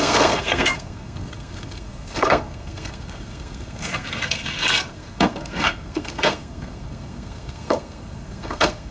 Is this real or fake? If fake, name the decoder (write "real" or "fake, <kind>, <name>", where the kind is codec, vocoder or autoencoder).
fake, codec, SNAC